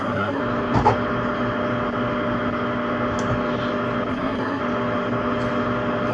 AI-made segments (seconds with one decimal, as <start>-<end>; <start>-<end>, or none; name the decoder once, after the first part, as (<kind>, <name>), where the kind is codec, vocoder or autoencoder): 0.0-0.4 (codec, SNAC); 4.1-4.6